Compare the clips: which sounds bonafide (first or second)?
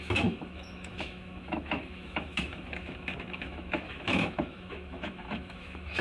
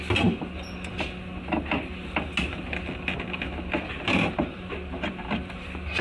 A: second